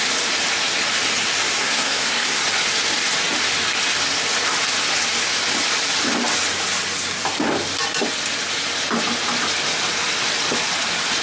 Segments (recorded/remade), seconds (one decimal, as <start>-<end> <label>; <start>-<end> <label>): 0.0-1.6 recorded; 1.6-2.4 remade; 2.4-11.2 recorded